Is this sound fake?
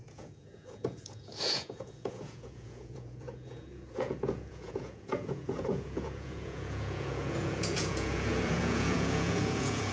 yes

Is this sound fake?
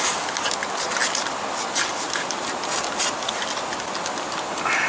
no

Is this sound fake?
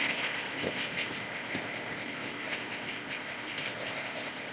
yes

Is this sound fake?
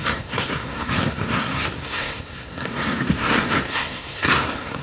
yes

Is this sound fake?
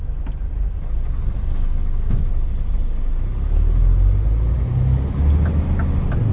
no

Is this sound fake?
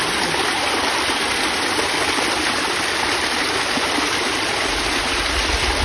no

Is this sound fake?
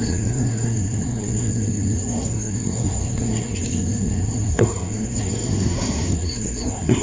yes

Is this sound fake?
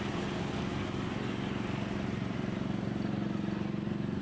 no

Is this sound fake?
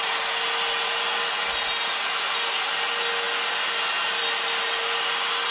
no